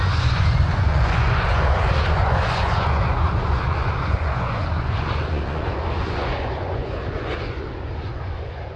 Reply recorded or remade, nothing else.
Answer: remade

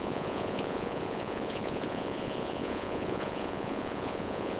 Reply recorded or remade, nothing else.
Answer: remade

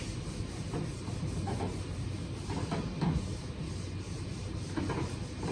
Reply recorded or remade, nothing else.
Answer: recorded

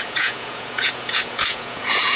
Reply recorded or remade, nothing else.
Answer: remade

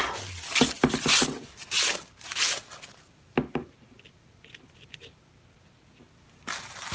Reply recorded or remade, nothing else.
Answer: recorded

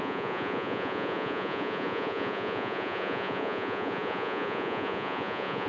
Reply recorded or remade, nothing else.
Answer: remade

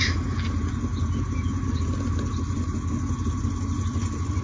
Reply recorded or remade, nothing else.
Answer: recorded